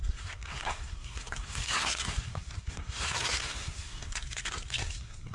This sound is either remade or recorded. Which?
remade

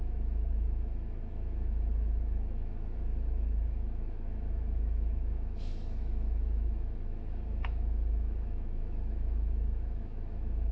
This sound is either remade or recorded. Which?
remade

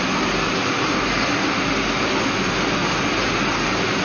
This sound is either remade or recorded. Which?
recorded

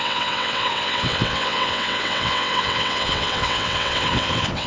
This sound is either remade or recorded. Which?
remade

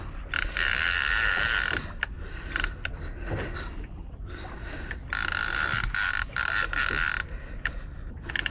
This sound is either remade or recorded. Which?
recorded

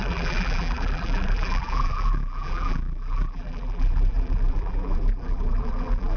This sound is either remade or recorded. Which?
remade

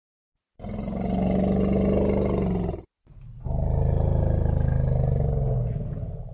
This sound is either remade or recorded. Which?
recorded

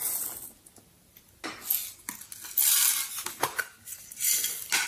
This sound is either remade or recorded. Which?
recorded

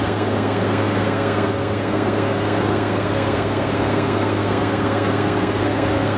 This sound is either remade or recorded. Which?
remade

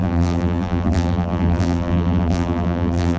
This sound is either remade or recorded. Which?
remade